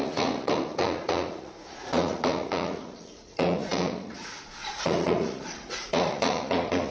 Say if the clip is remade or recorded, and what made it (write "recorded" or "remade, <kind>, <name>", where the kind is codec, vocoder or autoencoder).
remade, vocoder, Vocos